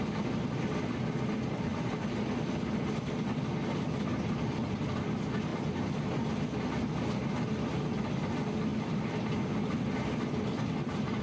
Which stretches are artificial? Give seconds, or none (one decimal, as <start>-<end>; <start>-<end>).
none